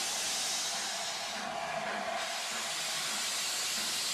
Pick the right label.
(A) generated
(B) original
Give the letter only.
B